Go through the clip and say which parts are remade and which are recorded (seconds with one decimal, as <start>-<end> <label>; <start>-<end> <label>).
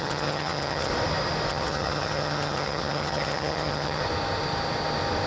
0.0-0.9 remade; 0.9-1.5 recorded; 1.5-4.0 remade; 4.0-5.3 recorded